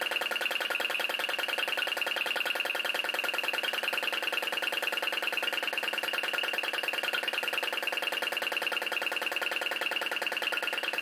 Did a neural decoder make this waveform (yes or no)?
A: no